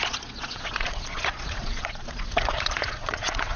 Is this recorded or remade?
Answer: remade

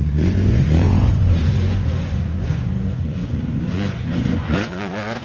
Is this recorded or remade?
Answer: remade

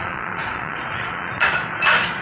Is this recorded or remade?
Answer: remade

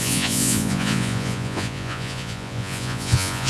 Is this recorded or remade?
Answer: remade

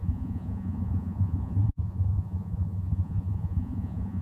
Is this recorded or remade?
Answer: remade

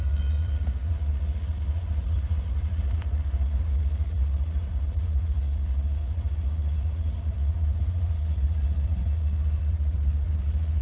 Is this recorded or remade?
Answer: remade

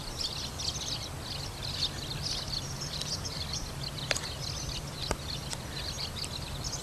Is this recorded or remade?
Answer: recorded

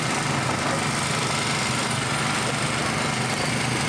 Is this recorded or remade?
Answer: recorded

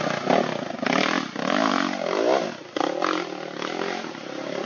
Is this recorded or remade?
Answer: recorded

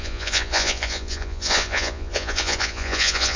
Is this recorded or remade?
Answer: remade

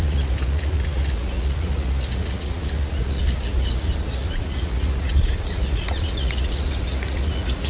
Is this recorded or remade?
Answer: remade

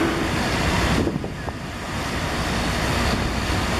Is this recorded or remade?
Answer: recorded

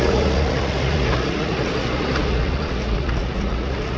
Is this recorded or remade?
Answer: remade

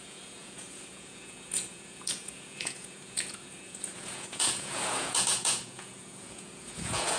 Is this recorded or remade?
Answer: remade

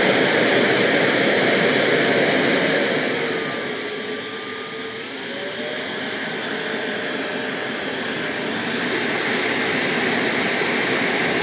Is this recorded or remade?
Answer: recorded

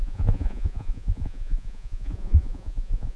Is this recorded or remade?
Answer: remade